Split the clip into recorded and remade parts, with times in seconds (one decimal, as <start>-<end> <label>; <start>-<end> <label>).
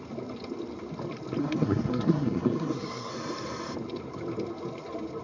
0.0-1.4 recorded; 1.4-3.1 remade; 3.1-5.2 recorded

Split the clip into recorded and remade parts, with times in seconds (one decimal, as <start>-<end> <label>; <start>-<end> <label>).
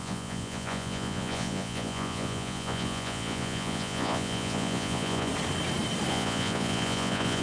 0.0-5.3 remade; 5.3-6.1 recorded; 6.1-7.4 remade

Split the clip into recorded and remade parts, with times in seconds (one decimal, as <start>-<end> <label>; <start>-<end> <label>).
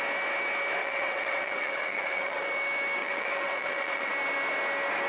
0.0-0.8 recorded; 0.8-2.4 remade; 2.4-3.0 recorded; 3.0-4.1 remade; 4.1-5.1 recorded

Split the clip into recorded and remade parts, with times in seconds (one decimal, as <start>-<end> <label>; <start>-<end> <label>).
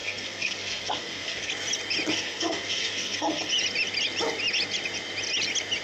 0.0-1.5 remade; 1.5-2.1 recorded; 2.1-3.5 remade; 3.5-5.8 recorded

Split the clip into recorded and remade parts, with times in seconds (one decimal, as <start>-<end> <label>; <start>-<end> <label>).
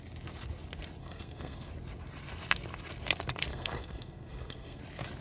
0.0-1.0 recorded; 1.0-1.7 remade; 1.7-3.5 recorded; 3.5-4.8 remade; 4.8-5.2 recorded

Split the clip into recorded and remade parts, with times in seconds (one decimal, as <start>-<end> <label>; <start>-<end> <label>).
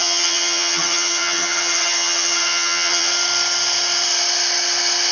0.0-3.1 remade; 3.1-5.1 recorded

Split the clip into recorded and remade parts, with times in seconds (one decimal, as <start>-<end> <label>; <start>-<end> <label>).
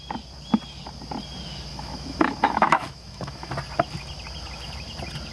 0.0-1.7 recorded; 1.7-3.5 remade; 3.5-5.3 recorded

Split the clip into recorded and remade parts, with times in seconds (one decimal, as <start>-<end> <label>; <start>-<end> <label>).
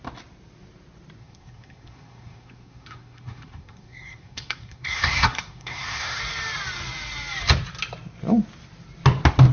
0.0-1.2 recorded; 1.2-6.2 remade; 6.2-9.5 recorded